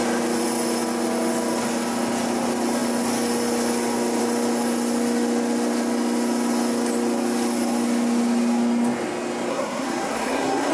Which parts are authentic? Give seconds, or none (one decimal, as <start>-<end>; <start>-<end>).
0.0-9.5

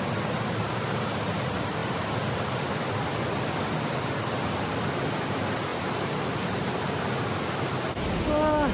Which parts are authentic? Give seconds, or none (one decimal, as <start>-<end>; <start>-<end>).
0.0-8.7

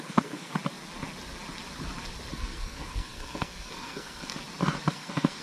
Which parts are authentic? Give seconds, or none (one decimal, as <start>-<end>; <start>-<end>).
0.5-2.3; 4.3-4.9

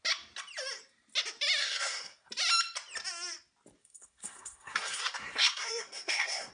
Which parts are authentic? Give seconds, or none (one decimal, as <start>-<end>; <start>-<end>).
0.0-1.6; 2.3-3.8

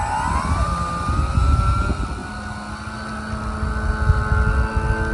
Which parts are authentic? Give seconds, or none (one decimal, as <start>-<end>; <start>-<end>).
0.0-5.1